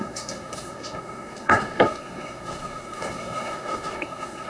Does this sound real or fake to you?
fake